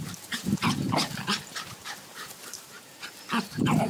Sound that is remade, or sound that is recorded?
remade